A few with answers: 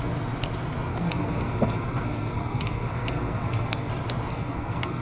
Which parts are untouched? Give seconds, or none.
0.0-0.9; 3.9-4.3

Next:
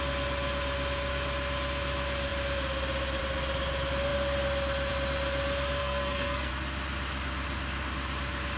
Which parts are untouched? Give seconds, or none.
0.0-5.8; 6.5-8.6

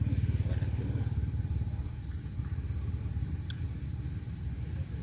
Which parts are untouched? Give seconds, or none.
0.0-5.0

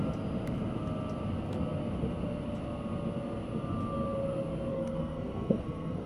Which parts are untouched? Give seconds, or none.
0.0-4.7

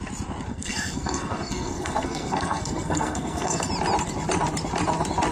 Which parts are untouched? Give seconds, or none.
0.0-0.5; 3.7-5.3

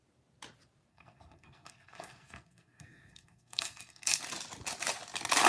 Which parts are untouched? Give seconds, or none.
0.0-0.9; 4.2-5.5